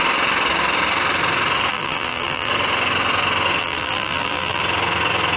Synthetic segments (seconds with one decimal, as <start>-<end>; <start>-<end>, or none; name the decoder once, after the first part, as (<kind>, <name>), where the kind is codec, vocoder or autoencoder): 1.7-2.5 (vocoder, BigVGAN v2); 3.6-4.6